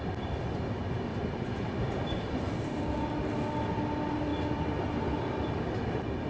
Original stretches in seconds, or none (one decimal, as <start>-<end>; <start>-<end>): 0.0-1.1; 2.8-6.3